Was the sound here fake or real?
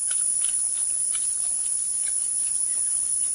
real